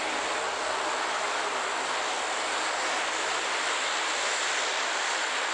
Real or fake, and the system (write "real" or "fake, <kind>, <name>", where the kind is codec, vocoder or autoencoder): real